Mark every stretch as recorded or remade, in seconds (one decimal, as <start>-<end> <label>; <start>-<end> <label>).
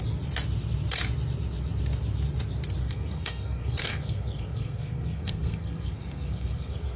0.0-2.8 recorded; 2.8-7.0 remade